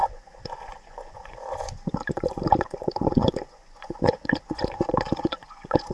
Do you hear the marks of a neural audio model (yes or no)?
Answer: yes